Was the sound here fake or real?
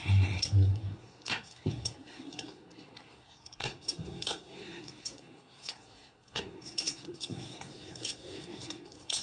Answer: fake